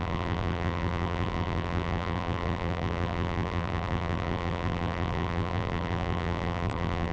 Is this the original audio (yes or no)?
no